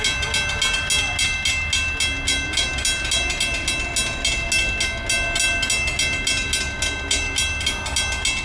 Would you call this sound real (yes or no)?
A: yes